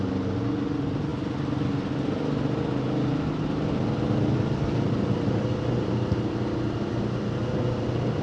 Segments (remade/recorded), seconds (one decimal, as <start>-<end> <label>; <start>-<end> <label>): 0.0-8.2 recorded